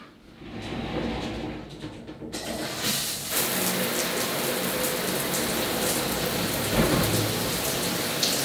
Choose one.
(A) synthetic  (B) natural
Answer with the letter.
B